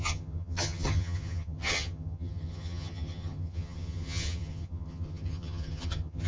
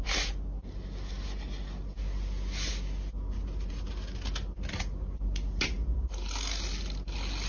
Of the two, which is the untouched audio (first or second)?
second